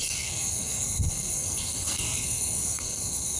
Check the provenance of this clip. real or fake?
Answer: fake